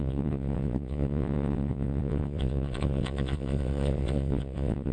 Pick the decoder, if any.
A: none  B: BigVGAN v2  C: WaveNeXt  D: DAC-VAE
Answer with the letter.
C